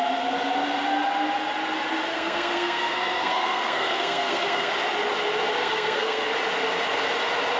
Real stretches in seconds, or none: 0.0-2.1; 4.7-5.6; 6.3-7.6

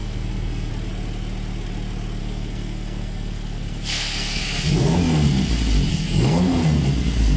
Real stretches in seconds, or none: 0.7-2.2; 5.5-5.9

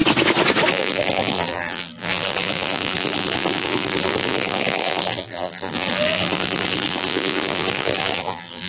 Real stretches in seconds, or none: 0.0-0.7

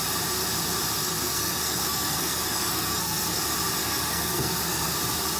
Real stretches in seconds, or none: 0.0-1.0; 3.4-3.8; 5.0-5.4

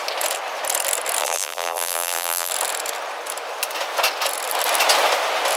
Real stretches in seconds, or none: 0.0-1.2; 2.5-5.6

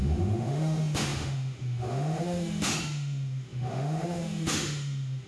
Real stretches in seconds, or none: none

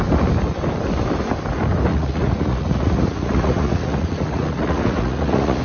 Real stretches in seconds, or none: 0.0-1.9

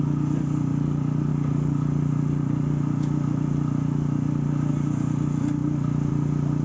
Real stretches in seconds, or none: none